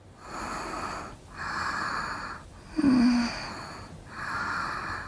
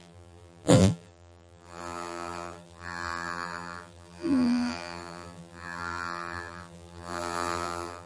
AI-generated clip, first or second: second